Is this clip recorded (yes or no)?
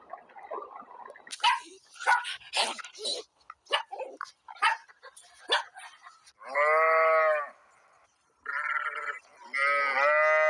yes